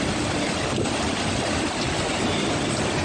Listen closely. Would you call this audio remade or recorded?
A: recorded